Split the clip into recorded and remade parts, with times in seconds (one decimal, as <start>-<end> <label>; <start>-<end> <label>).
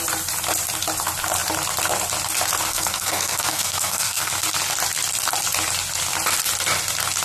0.0-2.7 recorded; 2.7-4.3 remade; 4.3-7.2 recorded